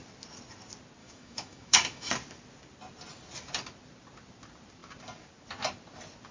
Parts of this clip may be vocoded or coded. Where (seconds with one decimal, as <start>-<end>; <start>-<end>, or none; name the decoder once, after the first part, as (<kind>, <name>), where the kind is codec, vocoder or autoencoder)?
1.0-2.1 (autoencoder, DAC-VAE)